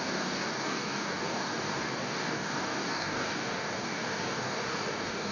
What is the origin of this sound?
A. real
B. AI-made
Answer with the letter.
B